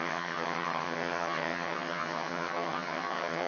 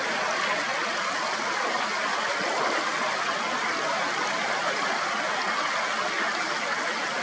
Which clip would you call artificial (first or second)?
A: first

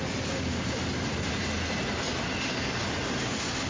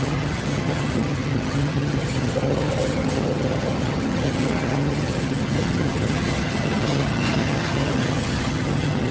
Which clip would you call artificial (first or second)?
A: second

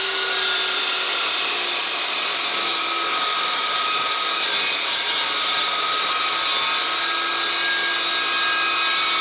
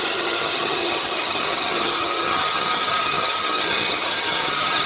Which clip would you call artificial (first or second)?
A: second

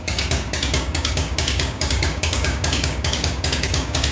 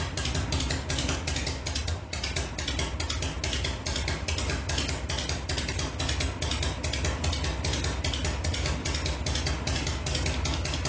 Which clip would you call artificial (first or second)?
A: first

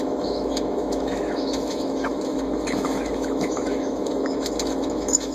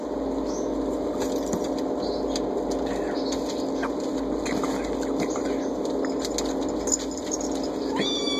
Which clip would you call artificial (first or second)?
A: first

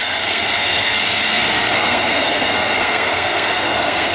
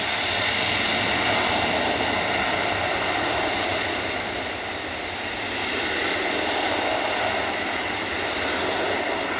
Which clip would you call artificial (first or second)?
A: first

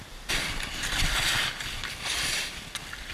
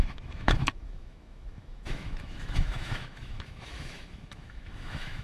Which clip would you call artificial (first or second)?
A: second